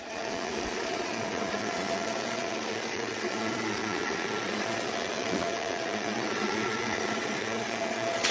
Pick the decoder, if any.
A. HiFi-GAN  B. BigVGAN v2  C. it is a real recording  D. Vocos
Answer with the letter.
D